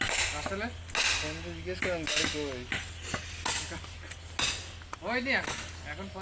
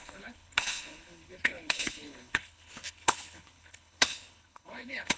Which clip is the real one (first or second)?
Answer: first